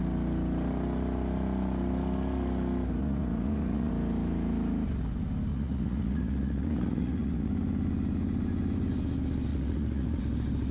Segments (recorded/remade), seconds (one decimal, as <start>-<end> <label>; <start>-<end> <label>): 0.0-3.0 recorded; 3.0-3.9 remade; 3.9-5.5 recorded; 5.5-7.5 remade; 7.5-9.5 recorded; 9.5-10.2 remade; 10.2-10.7 recorded